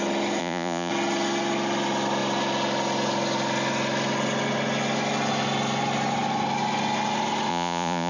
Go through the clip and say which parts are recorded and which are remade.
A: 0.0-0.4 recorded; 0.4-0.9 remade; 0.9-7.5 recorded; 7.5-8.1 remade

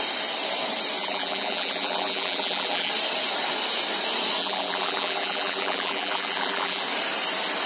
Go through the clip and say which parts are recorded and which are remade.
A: 0.0-1.0 recorded; 1.0-2.9 remade; 2.9-4.4 recorded; 4.4-6.8 remade; 6.8-7.7 recorded

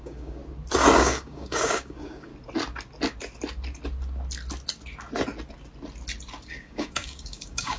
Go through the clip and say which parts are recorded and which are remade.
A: 0.0-0.4 remade; 0.4-1.0 recorded; 1.0-2.3 remade; 2.3-6.5 recorded; 6.5-7.8 remade

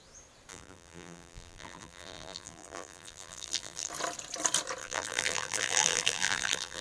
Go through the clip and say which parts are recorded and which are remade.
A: 0.0-0.5 recorded; 0.5-3.9 remade; 3.9-4.8 recorded; 4.8-6.8 remade

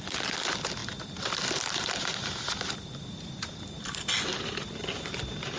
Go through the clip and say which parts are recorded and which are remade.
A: 0.0-5.6 recorded

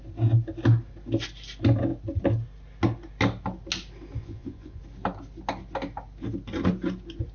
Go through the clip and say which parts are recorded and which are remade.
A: 0.0-4.2 recorded; 4.2-4.8 remade; 4.8-7.3 recorded

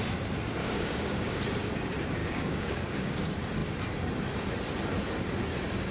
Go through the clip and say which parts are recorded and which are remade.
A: 0.0-0.6 recorded; 0.6-1.4 remade; 1.4-2.2 recorded; 2.2-3.2 remade; 3.2-5.9 recorded

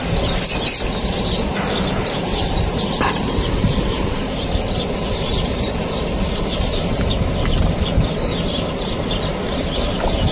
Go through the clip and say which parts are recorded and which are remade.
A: 0.0-2.7 recorded; 2.7-7.1 remade; 7.1-9.3 recorded; 9.3-9.9 remade; 9.9-10.3 recorded